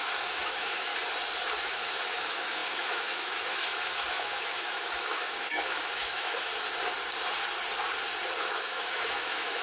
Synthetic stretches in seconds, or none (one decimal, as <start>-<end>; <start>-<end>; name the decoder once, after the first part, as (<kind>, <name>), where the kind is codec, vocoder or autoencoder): 0.0-0.9 (autoencoder, DAC-VAE); 1.6-6.5; 8.4-9.6